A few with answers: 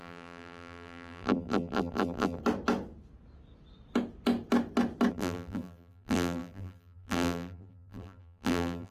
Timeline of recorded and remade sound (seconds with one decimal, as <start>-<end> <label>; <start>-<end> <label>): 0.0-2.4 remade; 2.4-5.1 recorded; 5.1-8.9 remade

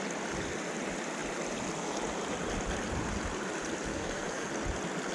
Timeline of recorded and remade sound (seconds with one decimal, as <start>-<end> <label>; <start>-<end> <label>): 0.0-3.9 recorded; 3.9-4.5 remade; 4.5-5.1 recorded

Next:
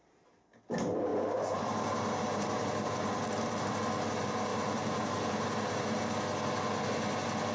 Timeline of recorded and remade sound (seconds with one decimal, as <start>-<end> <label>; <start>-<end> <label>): 0.0-1.1 recorded; 1.1-3.7 remade; 3.7-4.5 recorded; 4.5-6.0 remade; 6.0-7.5 recorded